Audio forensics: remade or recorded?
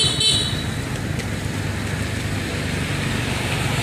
recorded